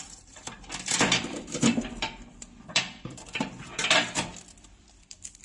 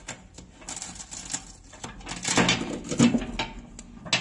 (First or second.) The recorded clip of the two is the second